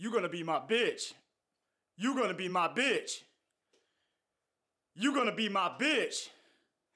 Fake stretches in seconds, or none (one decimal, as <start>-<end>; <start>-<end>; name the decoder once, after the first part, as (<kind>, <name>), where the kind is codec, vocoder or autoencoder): none